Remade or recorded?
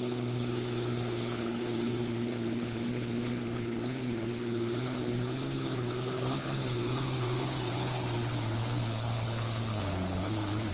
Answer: remade